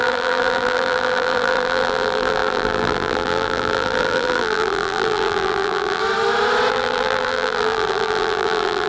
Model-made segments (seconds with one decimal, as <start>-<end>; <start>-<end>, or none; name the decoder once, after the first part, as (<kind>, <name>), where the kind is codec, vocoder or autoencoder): 0.0-6.0 (vocoder, BigVGAN v2); 6.7-8.9